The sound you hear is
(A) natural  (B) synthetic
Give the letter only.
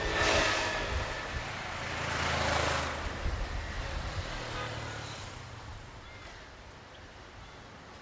A